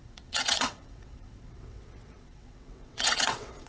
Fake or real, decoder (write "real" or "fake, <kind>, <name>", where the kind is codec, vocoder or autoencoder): fake, vocoder, WaveNeXt